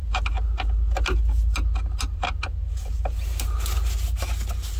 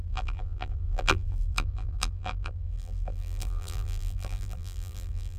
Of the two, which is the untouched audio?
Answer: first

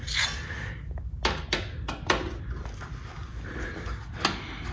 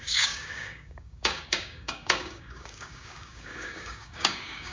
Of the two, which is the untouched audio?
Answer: first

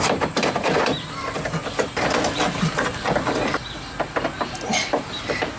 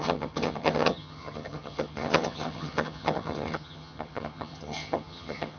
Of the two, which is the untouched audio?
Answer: first